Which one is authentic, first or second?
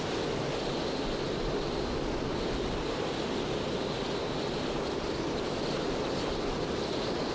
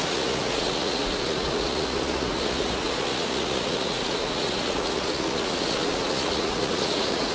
first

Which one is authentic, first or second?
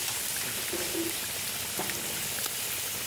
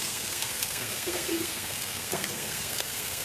first